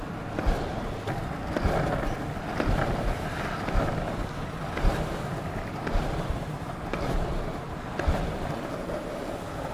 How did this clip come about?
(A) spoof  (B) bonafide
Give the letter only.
B